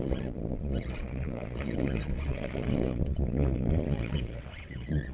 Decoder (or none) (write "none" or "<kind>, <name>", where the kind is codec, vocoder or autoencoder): vocoder, Vocos